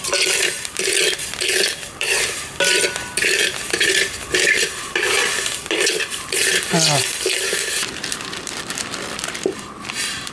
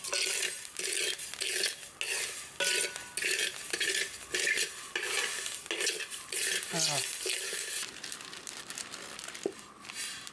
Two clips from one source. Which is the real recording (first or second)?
second